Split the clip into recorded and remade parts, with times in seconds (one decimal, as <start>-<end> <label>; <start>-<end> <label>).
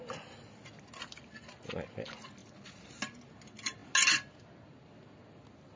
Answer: 0.0-5.8 recorded